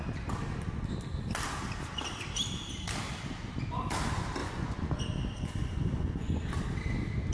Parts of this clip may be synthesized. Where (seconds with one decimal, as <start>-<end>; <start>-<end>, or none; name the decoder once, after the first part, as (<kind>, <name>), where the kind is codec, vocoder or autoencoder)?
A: 4.4-5.0 (vocoder, Vocos); 5.6-6.5